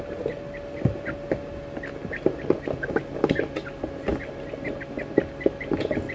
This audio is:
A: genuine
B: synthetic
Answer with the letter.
A